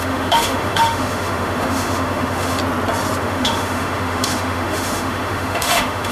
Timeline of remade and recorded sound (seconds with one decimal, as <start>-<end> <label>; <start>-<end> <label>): 0.0-2.6 remade; 2.6-3.2 recorded; 3.2-6.1 remade